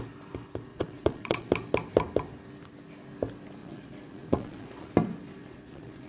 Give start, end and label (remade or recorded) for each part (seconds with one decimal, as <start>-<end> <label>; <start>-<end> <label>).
0.0-0.7 recorded; 0.7-1.5 remade; 1.5-3.6 recorded; 3.6-4.9 remade; 4.9-5.4 recorded; 5.4-6.1 remade